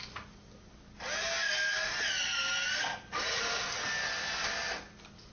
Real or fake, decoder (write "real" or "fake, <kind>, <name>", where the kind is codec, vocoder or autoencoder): real